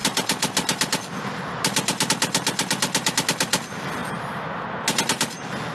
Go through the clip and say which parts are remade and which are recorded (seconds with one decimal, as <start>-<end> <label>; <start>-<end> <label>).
0.0-5.7 recorded